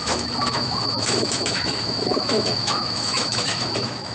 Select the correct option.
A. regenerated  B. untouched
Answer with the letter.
A